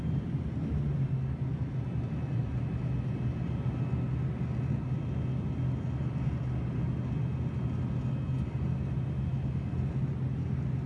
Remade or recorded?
recorded